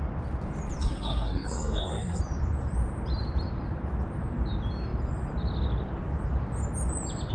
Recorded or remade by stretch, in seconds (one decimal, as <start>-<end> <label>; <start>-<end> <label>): 0.0-0.8 recorded; 0.8-2.2 remade; 2.2-7.3 recorded